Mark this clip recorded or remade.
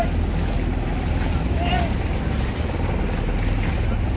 recorded